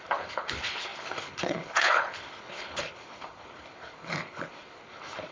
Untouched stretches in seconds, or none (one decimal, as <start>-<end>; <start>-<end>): none